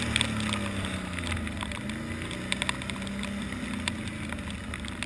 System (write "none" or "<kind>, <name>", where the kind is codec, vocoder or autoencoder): none